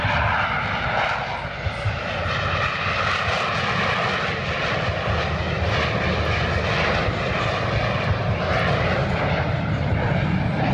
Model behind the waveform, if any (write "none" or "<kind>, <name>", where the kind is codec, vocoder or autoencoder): none